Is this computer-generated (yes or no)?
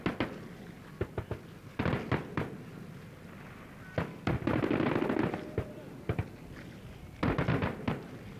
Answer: no